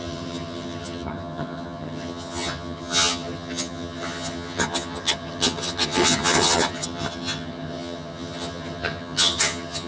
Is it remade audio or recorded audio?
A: remade